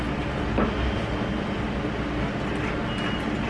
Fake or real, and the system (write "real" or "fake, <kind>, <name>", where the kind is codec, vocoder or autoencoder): real